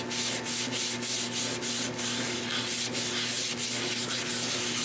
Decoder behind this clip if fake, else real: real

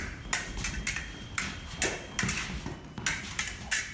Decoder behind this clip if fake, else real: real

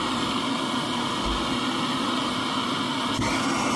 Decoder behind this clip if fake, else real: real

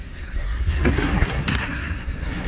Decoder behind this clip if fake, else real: fake, codec, SNAC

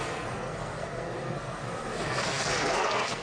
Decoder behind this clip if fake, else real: fake, codec, SNAC